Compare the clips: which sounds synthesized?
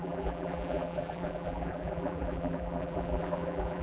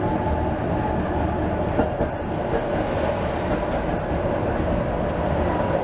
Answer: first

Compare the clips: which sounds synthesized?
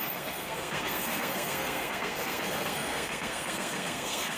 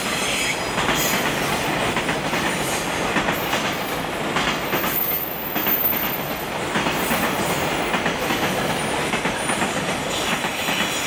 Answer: first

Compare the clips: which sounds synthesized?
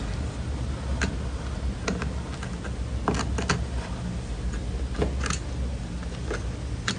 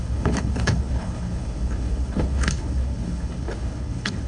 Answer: second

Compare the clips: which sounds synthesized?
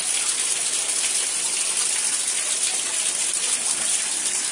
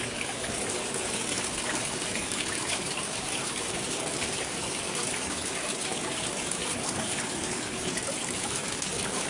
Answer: second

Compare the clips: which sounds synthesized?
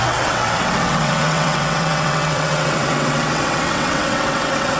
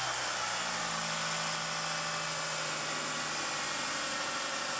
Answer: first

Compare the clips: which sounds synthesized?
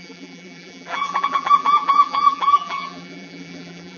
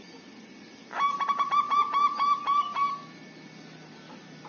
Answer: first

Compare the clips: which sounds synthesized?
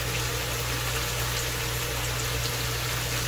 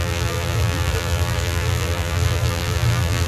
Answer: second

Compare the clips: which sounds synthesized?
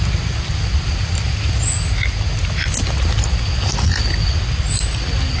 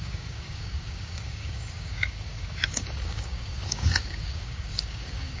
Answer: second